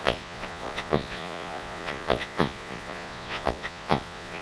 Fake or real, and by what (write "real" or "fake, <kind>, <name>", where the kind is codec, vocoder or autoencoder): fake, vocoder, Vocos